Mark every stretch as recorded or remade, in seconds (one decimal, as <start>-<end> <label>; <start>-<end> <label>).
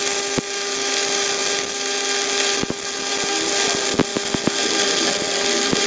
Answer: 0.0-5.9 recorded